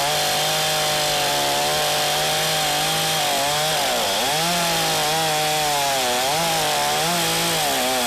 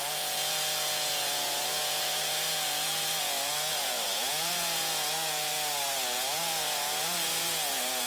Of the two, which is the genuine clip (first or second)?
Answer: first